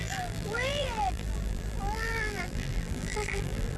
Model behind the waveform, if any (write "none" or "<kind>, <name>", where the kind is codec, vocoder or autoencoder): vocoder, BigVGAN v2